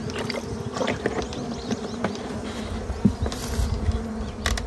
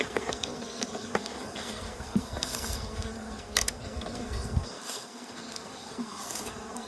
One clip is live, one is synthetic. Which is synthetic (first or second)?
second